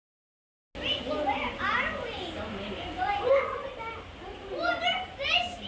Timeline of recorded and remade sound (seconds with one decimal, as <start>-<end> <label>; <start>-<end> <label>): 0.0-5.7 recorded